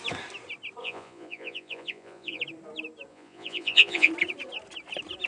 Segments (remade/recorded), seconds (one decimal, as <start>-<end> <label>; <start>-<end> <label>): 0.0-0.8 recorded; 0.8-2.4 remade; 2.4-3.1 recorded; 3.1-4.1 remade; 4.1-5.3 recorded